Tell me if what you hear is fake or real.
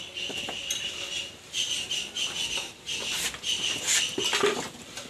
real